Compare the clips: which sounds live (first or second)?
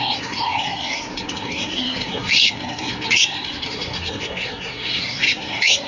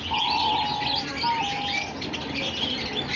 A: second